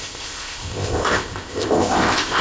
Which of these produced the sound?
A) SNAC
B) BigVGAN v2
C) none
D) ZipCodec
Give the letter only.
D